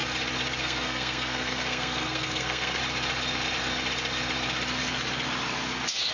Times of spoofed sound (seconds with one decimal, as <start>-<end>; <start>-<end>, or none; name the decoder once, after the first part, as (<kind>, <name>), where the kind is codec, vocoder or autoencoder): 0.6-2.8 (codec, SNAC)

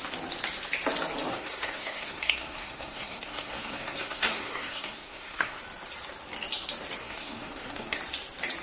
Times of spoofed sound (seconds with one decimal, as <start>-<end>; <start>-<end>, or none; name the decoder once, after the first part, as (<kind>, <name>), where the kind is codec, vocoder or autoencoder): 1.3-5.6 (codec, SNAC); 7.0-8.0

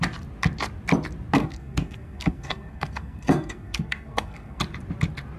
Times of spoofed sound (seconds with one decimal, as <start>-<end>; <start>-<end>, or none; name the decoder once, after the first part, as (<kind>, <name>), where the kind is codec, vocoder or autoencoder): 1.4-4.6 (codec, SNAC)

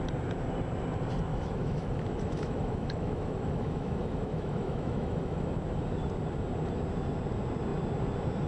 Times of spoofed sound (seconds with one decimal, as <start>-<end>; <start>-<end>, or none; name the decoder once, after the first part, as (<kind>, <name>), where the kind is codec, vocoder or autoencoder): 1.3-5.5 (autoencoder, DAC-VAE)

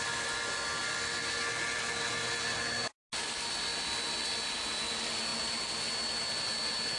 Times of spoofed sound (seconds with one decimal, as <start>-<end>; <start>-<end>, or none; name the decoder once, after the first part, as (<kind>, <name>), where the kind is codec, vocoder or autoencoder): none